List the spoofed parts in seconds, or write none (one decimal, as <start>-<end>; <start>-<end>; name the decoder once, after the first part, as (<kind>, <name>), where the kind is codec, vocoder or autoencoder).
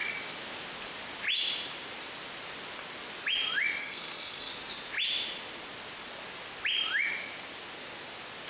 3.8-4.5 (codec, SNAC)